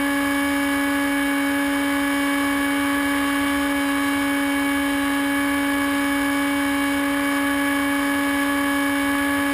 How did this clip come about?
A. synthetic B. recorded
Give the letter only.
B